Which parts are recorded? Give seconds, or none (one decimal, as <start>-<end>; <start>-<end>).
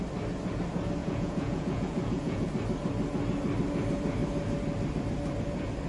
0.0-1.0; 2.5-5.9